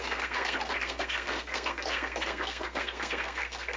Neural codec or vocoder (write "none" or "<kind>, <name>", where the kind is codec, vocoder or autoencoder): codec, SNAC